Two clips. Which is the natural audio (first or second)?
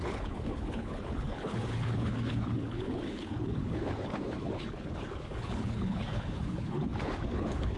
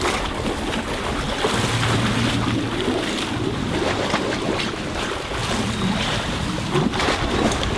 second